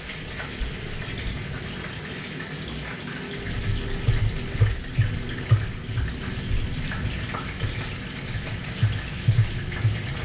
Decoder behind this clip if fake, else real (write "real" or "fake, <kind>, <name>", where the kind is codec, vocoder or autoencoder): real